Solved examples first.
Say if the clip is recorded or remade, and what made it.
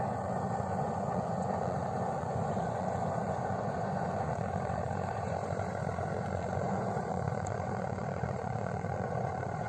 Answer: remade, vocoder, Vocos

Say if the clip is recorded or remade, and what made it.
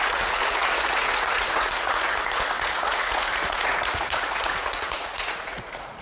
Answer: remade, vocoder, Vocos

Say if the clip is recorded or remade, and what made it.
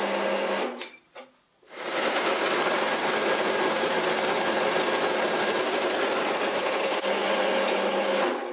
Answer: recorded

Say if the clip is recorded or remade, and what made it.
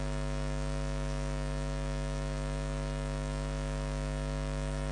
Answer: remade, autoencoder, DAC-VAE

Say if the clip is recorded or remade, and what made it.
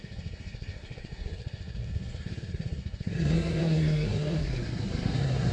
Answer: remade, codec, SNAC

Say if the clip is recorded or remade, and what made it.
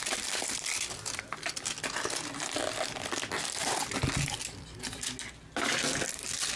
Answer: recorded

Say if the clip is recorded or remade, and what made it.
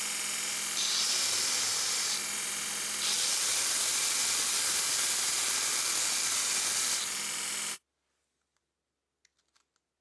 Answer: recorded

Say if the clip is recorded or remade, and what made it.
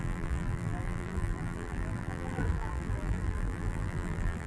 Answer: remade, vocoder, BigVGAN v2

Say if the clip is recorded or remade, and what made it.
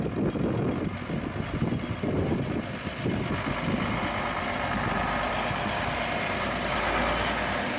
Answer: recorded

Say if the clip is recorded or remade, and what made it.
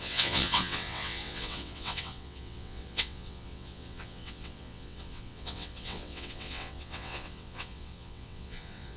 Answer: remade, vocoder, WaveNeXt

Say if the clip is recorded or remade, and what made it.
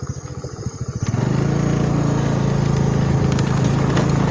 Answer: recorded